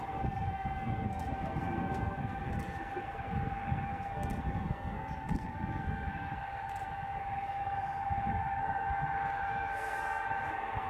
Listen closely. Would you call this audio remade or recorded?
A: remade